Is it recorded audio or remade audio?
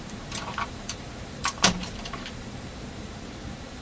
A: remade